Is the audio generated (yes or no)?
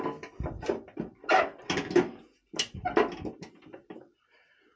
no